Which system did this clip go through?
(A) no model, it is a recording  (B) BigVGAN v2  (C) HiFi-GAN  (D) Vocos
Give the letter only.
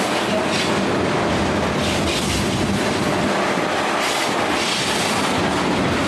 A